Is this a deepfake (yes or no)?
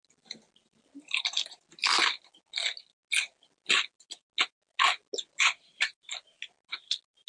no